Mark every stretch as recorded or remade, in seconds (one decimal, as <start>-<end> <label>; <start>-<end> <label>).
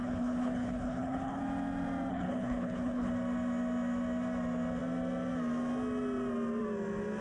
0.0-1.4 remade; 1.4-2.1 recorded; 2.1-3.1 remade; 3.1-7.2 recorded